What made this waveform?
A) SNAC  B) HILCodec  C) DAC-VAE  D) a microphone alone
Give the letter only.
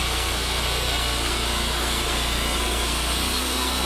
A